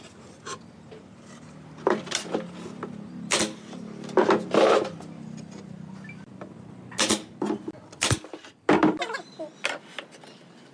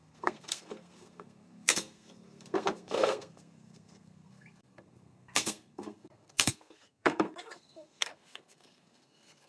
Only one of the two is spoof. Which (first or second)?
second